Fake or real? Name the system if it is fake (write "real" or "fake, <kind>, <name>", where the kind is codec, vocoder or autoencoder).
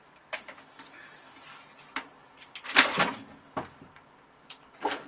real